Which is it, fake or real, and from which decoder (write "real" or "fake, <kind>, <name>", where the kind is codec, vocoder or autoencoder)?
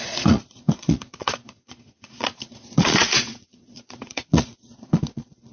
fake, vocoder, Vocos